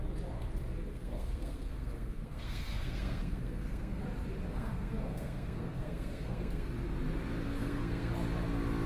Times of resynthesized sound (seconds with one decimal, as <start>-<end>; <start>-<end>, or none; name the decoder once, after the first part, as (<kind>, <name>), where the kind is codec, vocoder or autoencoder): 0.9-4.0 (codec, SNAC); 4.5-6.7; 7.6-8.1